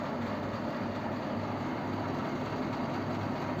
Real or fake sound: fake